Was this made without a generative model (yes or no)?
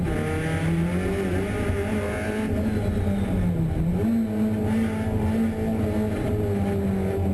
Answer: yes